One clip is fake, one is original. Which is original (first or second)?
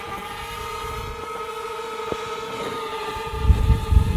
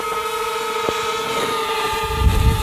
second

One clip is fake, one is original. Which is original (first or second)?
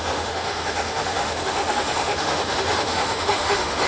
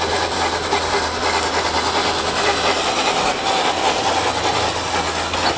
second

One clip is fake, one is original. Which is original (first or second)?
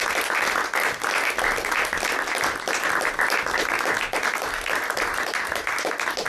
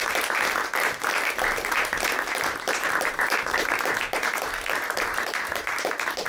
first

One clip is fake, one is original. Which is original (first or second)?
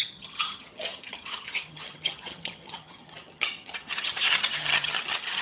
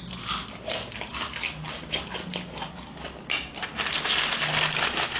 second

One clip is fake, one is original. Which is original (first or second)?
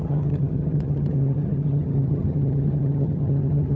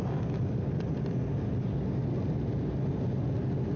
second